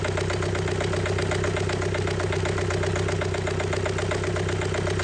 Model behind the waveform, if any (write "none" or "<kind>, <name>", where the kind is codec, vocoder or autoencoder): none